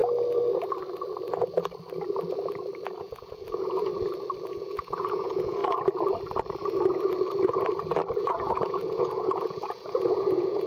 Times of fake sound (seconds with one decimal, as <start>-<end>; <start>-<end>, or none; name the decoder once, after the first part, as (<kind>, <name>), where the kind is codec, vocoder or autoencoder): 3.0-3.9 (vocoder, Vocos); 4.5-5.6; 8.2-10.7

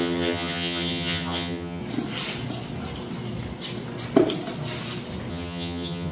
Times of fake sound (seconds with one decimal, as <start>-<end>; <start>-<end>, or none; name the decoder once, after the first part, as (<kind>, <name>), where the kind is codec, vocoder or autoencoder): 0.0-1.8 (vocoder, HiFi-GAN); 5.3-6.1

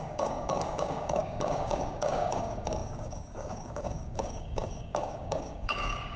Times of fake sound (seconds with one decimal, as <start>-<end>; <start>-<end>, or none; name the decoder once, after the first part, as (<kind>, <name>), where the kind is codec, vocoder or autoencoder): 0.0-6.2 (codec, DAC)